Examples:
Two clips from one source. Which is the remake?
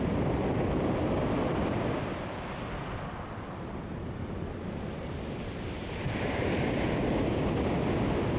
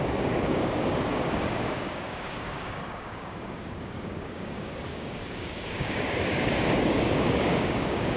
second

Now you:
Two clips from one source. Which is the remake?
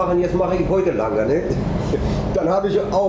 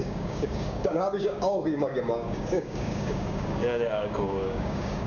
second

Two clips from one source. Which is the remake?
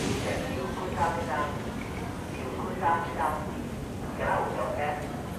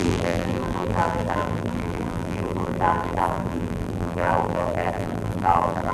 second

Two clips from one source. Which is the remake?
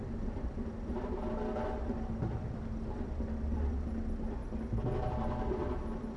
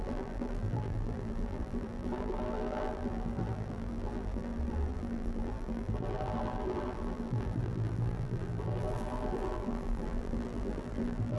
second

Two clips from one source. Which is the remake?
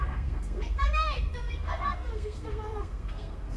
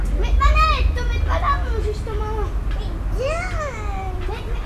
first